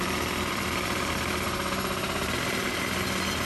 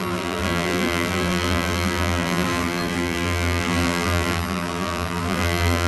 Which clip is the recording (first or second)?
first